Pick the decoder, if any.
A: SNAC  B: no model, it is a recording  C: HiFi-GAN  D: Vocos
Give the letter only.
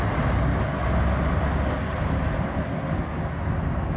B